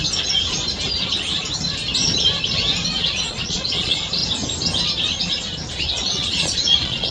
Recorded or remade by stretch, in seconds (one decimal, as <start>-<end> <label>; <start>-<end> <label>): 0.0-2.9 recorded; 2.9-4.2 remade; 4.2-5.7 recorded; 5.7-7.1 remade